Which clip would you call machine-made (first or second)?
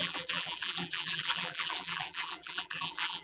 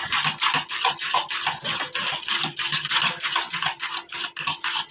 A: first